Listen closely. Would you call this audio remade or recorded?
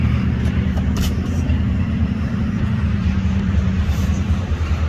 remade